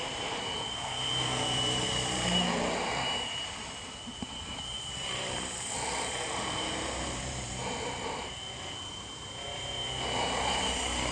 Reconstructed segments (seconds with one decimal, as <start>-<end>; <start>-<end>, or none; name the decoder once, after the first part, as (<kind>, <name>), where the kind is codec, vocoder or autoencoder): 0.0-7.6 (vocoder, BigVGAN v2); 8.9-11.1